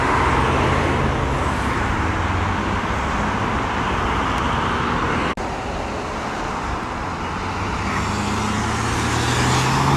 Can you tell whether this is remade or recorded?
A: recorded